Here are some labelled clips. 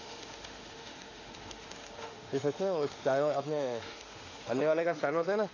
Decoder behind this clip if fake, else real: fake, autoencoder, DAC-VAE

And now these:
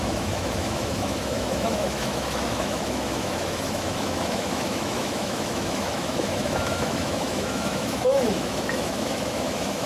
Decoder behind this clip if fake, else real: fake, autoencoder, DAC-VAE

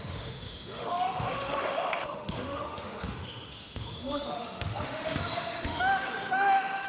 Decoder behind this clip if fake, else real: fake, autoencoder, DAC-VAE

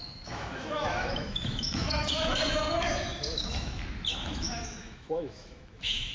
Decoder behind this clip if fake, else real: fake, autoencoder, DAC-VAE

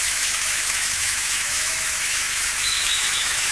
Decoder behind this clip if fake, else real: fake, autoencoder, DAC-VAE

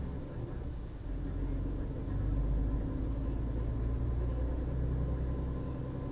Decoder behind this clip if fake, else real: real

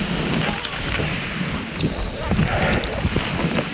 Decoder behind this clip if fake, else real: real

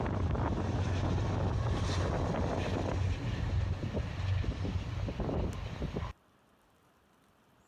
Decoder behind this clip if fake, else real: real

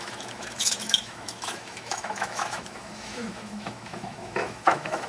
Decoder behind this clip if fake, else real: fake, autoencoder, DAC-VAE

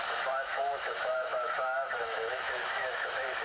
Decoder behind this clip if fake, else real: fake, autoencoder, DAC-VAE